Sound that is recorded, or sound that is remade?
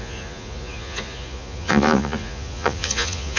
remade